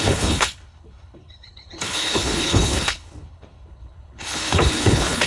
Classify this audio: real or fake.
fake